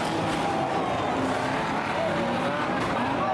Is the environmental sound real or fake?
real